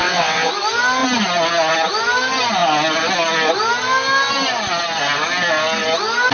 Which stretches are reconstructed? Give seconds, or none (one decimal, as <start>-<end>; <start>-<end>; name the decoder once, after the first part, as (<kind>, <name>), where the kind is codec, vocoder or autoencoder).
0.0-0.5 (vocoder, WaveNeXt)